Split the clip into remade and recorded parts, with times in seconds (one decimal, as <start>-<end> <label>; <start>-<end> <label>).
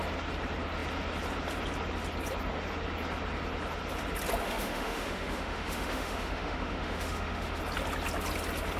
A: 0.0-4.4 recorded; 4.4-7.6 remade; 7.6-8.8 recorded